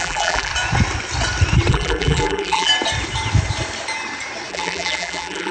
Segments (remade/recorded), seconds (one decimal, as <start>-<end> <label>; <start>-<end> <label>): 0.0-0.5 remade; 0.5-1.7 recorded; 1.7-2.7 remade; 2.7-4.5 recorded; 4.5-5.5 remade